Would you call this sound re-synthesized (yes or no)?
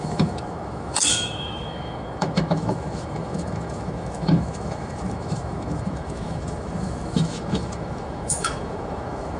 yes